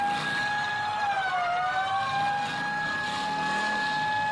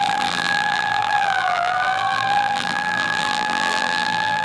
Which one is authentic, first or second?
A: first